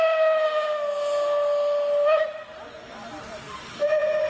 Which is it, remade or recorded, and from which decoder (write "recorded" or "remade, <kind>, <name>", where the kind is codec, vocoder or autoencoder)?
recorded